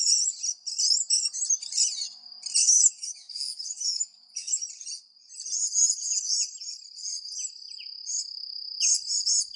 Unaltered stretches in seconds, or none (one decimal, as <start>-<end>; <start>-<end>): 0.0-2.6; 4.7-9.6